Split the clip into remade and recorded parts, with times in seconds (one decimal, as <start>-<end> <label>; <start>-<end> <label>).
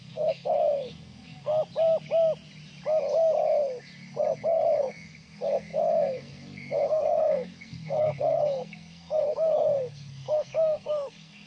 0.0-1.5 remade; 1.5-4.8 recorded; 4.8-11.5 remade